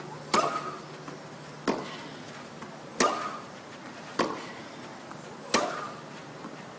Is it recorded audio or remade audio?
recorded